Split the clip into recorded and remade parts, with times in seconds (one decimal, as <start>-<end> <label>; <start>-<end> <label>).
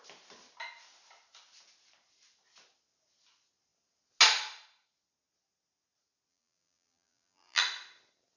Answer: 0.0-6.3 recorded; 6.3-7.6 remade; 7.6-8.4 recorded